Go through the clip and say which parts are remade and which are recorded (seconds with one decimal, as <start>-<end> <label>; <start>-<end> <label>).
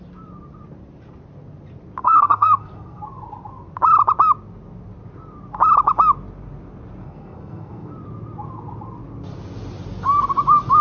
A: 0.0-2.0 recorded; 2.0-3.0 remade; 3.0-7.0 recorded; 7.0-7.9 remade; 7.9-10.8 recorded